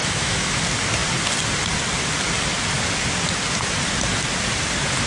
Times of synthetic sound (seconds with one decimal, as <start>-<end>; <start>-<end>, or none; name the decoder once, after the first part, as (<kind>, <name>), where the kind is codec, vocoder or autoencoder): 0.0-0.6 (autoencoder, DAC-VAE)